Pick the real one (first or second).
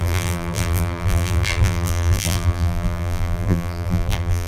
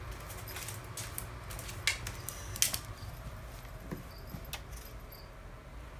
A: second